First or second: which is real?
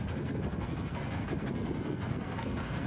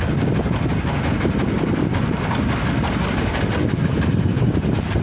second